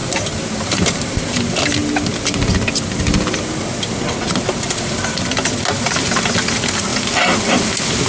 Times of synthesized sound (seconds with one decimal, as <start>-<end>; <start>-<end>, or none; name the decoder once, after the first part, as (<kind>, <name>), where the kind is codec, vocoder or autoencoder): 0.0-1.4 (vocoder, BigVGAN v2)